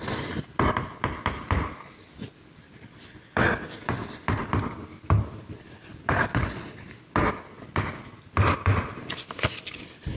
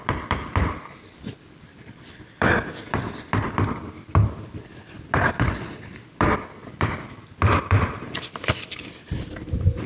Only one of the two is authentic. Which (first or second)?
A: first